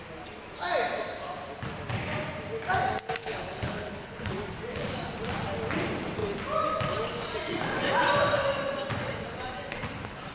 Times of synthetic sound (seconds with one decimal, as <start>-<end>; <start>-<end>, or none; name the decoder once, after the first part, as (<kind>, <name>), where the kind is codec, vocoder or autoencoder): 3.2-4.3 (codec, HILCodec)